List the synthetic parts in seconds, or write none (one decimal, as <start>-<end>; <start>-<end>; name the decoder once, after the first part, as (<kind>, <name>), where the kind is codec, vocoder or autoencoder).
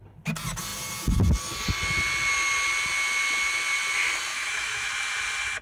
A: 4.3-4.9 (autoencoder, DAC-VAE)